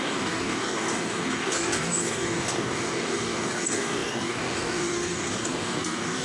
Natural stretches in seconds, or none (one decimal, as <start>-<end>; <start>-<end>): none